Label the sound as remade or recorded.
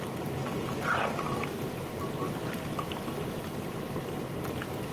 remade